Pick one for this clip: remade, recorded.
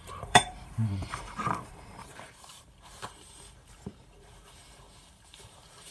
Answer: remade